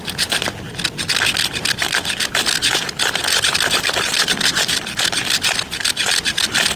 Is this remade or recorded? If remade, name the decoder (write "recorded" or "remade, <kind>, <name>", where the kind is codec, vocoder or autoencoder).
recorded